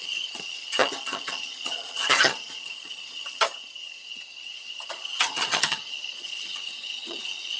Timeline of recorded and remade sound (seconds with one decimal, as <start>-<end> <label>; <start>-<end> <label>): 0.0-7.6 remade